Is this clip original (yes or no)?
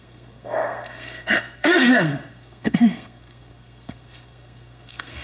no